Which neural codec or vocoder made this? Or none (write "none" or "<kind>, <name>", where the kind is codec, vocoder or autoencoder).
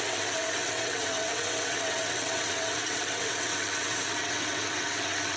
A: vocoder, WaveNeXt